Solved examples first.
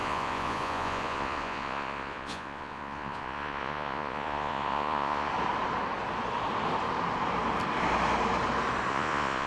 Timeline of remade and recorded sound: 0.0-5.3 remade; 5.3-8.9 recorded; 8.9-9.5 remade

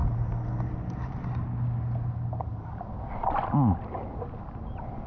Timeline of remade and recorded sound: 0.0-5.1 recorded

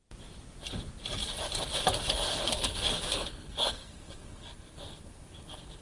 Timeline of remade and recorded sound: 0.0-2.3 recorded; 2.3-5.8 remade

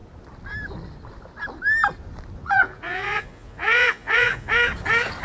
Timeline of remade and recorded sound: 0.0-2.4 recorded; 2.4-4.5 remade; 4.5-5.2 recorded

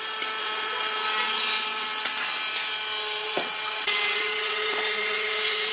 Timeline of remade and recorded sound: 0.0-0.4 recorded; 0.4-2.0 remade; 2.0-3.2 recorded; 3.2-5.7 remade

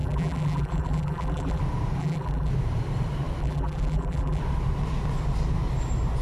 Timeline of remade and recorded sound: 0.0-1.6 remade; 1.6-2.0 recorded; 2.0-2.5 remade; 2.5-3.4 recorded; 3.4-4.4 remade; 4.4-6.2 recorded